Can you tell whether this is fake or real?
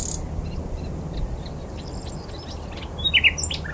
real